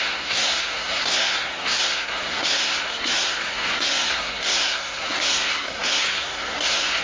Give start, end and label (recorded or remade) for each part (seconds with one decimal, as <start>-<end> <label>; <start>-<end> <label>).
0.0-7.0 remade